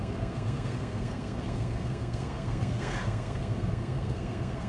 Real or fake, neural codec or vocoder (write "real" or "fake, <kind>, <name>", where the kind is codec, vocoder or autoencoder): fake, codec, SNAC